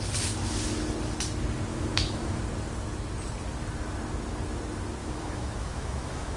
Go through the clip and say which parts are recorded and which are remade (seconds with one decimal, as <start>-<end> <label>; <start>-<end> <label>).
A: 0.0-1.7 recorded; 1.7-2.4 remade; 2.4-5.0 recorded; 5.0-6.4 remade